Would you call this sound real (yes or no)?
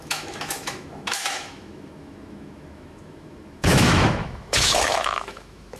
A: no